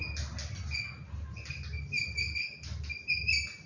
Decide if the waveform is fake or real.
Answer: real